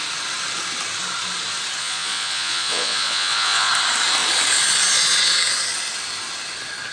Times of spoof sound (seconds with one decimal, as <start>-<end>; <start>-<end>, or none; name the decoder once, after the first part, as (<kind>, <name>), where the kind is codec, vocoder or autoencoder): 1.8-3.7 (vocoder, Vocos)